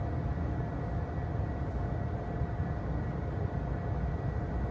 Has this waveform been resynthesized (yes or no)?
no